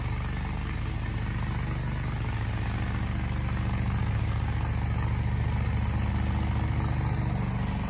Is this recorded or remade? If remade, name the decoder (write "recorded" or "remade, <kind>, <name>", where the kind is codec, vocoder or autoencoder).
recorded